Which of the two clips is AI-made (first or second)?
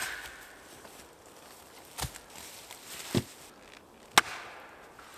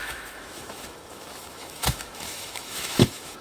second